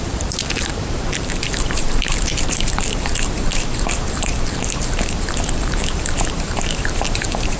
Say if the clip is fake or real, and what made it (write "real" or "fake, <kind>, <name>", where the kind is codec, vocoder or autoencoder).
fake, vocoder, BigVGAN v2